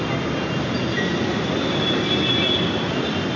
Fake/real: real